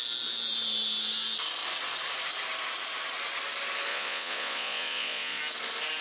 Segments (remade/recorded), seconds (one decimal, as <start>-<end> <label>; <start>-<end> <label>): 0.0-3.9 recorded; 3.9-5.4 remade; 5.4-6.0 recorded